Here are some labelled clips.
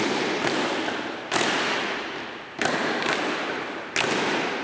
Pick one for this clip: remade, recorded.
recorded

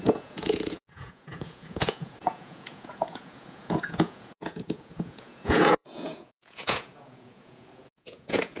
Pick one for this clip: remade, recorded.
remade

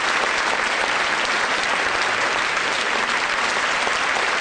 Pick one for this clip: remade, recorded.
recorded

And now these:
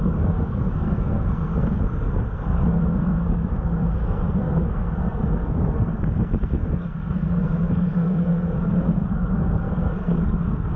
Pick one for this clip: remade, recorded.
remade